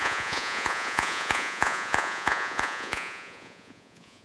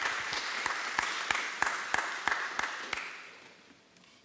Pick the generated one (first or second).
first